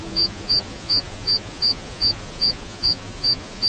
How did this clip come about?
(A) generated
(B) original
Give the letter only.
A